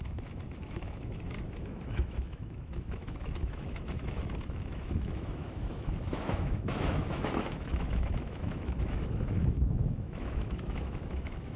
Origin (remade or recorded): remade